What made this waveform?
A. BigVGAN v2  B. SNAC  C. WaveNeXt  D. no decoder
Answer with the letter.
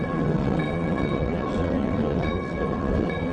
C